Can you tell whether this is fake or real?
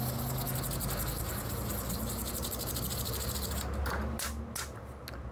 real